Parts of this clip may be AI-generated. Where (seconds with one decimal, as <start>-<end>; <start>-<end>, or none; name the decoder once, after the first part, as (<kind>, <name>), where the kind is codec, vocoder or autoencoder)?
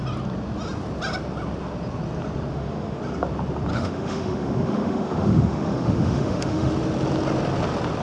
2.5-3.0 (autoencoder, DAC-VAE); 3.7-6.7